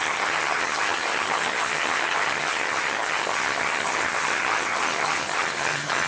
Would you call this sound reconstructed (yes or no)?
yes